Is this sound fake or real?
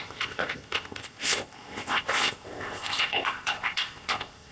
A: fake